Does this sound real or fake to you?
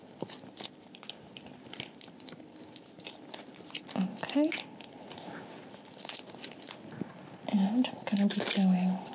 real